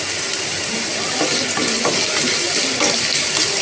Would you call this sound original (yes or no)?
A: yes